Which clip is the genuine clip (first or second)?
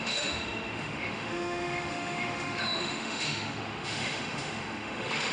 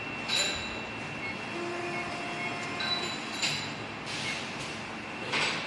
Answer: second